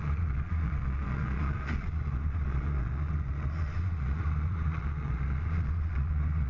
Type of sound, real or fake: fake